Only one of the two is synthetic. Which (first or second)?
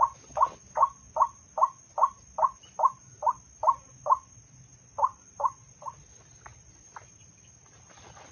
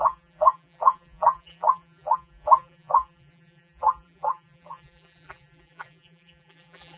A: second